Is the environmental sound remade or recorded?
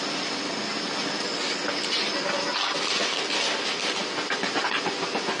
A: recorded